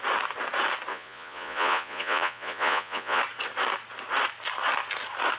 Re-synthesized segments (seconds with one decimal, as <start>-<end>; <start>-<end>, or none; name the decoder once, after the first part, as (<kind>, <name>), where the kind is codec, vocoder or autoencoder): 0.9-3.2 (vocoder, Vocos)